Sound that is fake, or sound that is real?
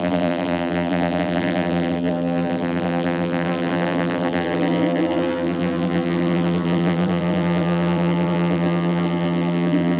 fake